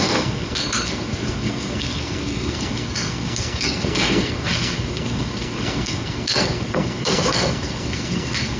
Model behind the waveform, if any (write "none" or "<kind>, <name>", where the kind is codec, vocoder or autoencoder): codec, SNAC